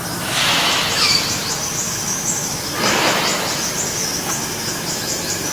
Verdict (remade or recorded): remade